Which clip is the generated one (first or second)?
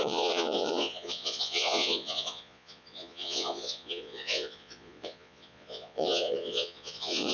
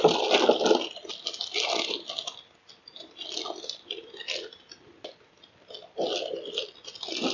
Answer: first